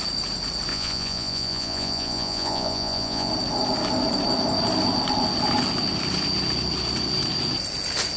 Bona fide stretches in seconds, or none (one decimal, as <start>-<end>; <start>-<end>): 0.0-0.7; 3.3-8.2